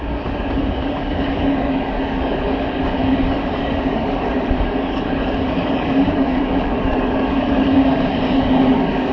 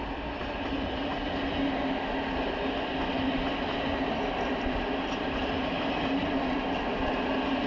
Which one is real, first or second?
second